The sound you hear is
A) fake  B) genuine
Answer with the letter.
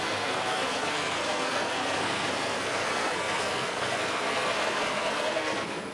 A